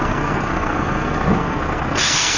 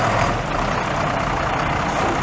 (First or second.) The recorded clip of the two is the second